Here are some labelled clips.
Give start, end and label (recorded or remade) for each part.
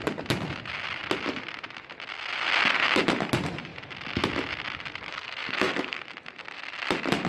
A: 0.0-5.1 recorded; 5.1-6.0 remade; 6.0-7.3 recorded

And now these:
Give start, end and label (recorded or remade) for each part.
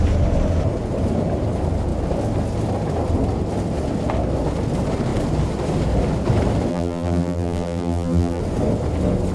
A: 0.0-6.7 recorded; 6.7-8.4 remade; 8.4-9.3 recorded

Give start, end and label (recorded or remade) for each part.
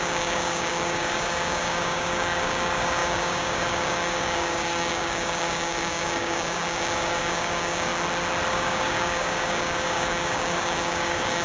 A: 0.0-7.9 remade; 7.9-8.5 recorded; 8.5-11.4 remade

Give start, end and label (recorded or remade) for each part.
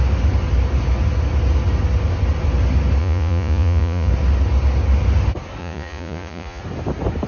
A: 0.0-3.0 recorded; 3.0-4.1 remade; 4.1-5.6 recorded; 5.6-6.6 remade; 6.6-7.3 recorded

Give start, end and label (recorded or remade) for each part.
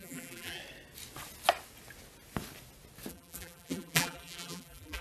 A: 0.0-0.6 remade; 0.6-3.1 recorded; 3.1-5.0 remade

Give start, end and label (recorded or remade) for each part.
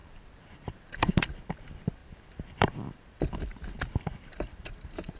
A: 0.0-1.2 remade; 1.2-2.0 recorded; 2.0-5.2 remade